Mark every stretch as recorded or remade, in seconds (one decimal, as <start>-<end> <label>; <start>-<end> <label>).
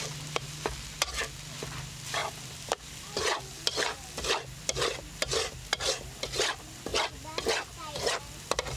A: 0.0-8.8 recorded